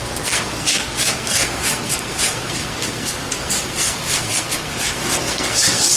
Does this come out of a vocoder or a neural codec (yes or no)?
yes